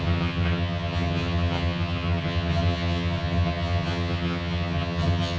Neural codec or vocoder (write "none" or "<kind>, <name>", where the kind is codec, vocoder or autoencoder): vocoder, HiFi-GAN